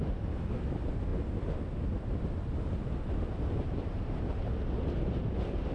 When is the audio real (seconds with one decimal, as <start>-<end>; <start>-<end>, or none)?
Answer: 0.0-5.7

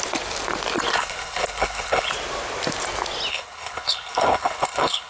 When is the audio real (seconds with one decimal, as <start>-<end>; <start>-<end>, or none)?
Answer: 0.0-0.9; 2.1-3.3

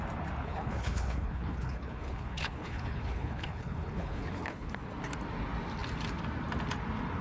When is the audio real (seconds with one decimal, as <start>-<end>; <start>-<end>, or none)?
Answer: 0.0-0.4; 4.7-7.2

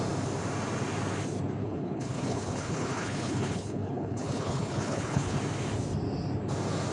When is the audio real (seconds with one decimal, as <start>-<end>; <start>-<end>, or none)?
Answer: 0.0-1.6; 5.4-6.9

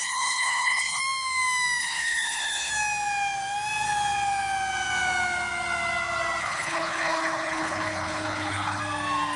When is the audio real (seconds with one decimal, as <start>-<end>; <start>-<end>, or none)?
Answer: 1.0-1.8; 2.7-6.4; 8.8-9.4

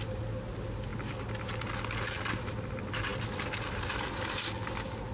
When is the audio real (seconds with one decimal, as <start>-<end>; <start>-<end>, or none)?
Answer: 0.0-5.1

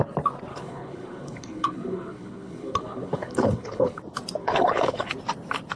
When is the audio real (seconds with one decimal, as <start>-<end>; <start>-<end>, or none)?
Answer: 0.0-0.5; 4.0-4.4; 5.1-5.8

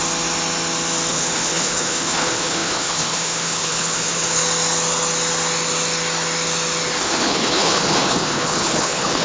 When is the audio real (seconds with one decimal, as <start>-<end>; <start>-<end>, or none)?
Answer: 0.0-1.1; 4.4-7.0